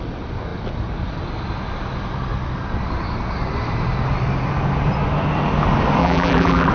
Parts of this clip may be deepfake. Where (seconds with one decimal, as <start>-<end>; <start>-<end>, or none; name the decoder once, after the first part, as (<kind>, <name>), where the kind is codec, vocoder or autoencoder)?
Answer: 6.0-6.7 (vocoder, BigVGAN v2)